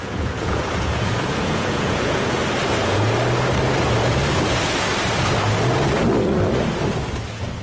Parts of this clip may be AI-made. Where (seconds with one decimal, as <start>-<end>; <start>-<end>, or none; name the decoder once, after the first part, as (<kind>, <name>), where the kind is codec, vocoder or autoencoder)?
0.0-2.4 (vocoder, Vocos)